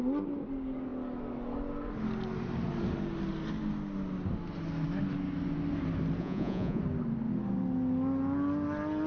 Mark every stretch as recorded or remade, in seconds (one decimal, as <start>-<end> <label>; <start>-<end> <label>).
0.0-6.2 recorded; 6.2-6.8 remade; 6.8-9.1 recorded